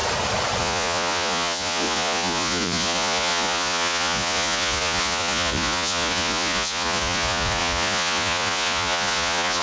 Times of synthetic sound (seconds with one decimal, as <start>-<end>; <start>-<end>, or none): 0.6-9.6